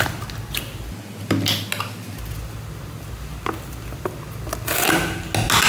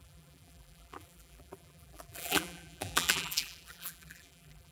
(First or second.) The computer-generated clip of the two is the second